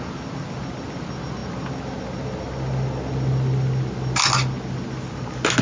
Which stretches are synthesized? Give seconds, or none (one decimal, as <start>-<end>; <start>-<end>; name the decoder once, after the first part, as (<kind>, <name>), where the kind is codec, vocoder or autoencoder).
none